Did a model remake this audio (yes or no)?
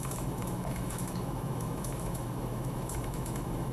yes